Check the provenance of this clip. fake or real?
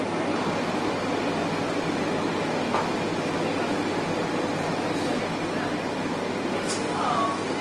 real